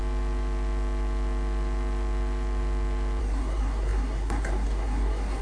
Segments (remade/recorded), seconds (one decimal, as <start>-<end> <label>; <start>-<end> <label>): 0.0-3.2 recorded; 3.2-5.4 remade